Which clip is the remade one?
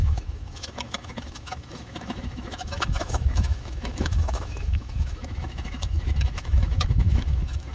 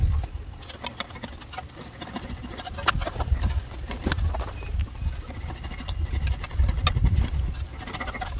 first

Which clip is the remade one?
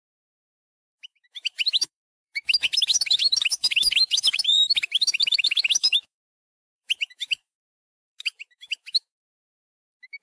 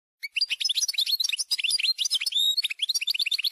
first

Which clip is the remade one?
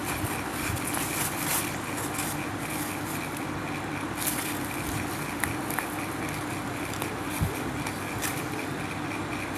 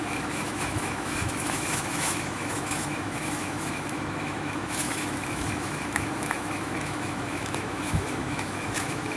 second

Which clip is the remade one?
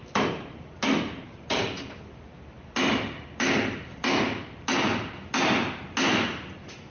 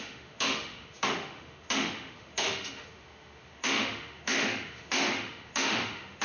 second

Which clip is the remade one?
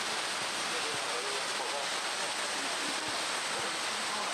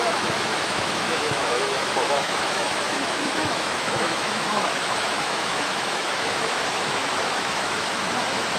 second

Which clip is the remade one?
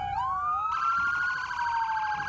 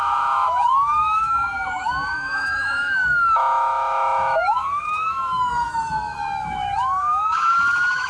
second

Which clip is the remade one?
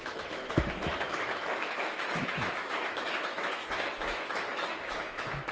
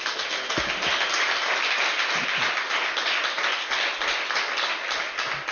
first